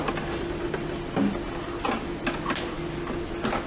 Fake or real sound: real